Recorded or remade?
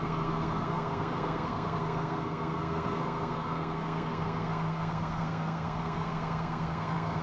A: remade